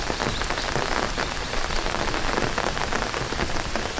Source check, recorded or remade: recorded